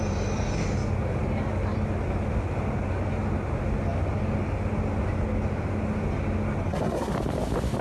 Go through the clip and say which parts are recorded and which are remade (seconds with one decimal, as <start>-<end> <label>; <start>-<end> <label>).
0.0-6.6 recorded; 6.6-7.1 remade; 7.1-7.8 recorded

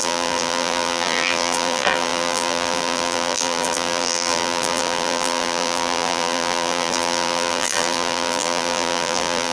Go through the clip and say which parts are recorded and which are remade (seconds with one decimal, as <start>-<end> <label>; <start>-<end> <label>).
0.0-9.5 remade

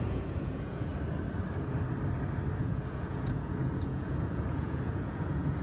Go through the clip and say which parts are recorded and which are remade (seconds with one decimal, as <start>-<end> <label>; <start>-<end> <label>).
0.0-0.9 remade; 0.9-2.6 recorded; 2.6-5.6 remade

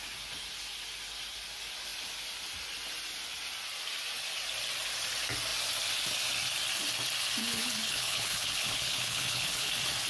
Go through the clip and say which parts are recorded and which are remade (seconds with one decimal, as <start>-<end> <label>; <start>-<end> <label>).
0.0-7.4 recorded; 7.4-9.7 remade; 9.7-10.1 recorded

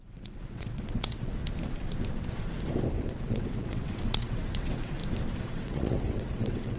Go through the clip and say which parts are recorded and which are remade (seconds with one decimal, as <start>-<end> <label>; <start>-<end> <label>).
0.0-1.4 remade; 1.4-2.9 recorded; 2.9-5.0 remade; 5.0-5.5 recorded; 5.5-6.8 remade